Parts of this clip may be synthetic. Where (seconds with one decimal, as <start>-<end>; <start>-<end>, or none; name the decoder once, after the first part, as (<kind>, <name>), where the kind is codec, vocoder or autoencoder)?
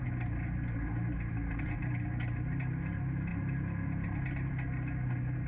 none